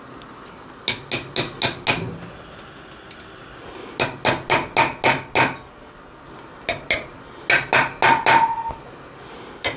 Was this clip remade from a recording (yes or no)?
no